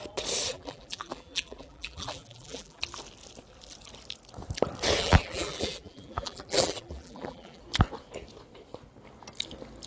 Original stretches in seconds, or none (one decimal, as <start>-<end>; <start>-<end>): 0.0-0.5; 2.8-5.0; 7.6-9.9

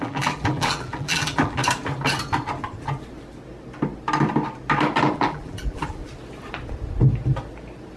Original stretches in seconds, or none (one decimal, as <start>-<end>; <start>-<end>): 1.6-5.0; 6.0-8.0

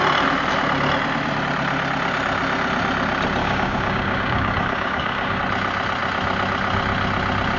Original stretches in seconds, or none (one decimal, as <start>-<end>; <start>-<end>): 0.0-3.4; 5.4-7.6